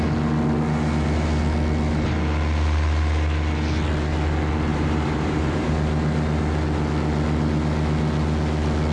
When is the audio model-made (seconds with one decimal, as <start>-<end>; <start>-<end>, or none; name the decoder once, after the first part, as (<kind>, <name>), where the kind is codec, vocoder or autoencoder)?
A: 4.7-5.7 (vocoder, BigVGAN v2)